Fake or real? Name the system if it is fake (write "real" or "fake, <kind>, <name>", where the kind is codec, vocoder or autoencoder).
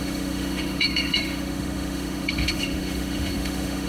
fake, autoencoder, DAC-VAE